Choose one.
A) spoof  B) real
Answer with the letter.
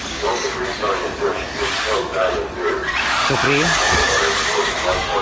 A